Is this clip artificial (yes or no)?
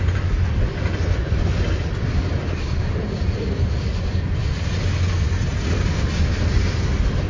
no